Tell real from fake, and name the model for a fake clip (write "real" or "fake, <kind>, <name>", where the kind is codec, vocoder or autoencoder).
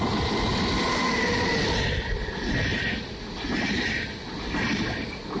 real